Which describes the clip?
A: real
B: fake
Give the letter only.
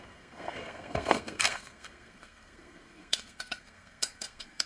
B